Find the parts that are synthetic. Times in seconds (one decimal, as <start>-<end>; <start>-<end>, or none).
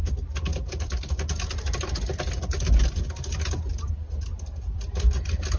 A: none